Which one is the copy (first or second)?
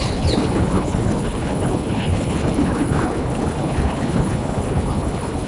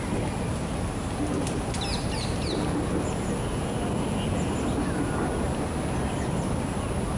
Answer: first